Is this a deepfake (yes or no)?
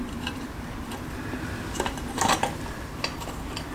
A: no